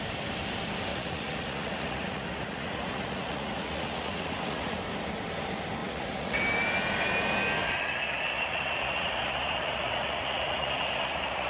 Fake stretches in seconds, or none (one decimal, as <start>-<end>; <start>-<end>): 0.9-4.8; 5.8-6.4; 7.6-11.5